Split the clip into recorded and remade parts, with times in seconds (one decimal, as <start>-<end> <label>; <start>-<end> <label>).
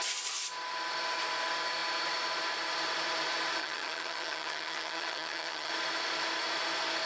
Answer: 0.0-3.6 recorded; 3.6-5.7 remade; 5.7-7.1 recorded